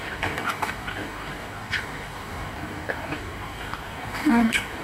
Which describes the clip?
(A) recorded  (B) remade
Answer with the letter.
B